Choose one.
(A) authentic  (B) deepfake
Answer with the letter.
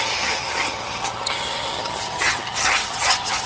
B